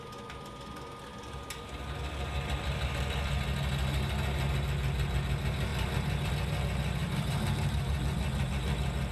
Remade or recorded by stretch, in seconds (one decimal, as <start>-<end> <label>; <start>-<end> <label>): 0.0-9.1 recorded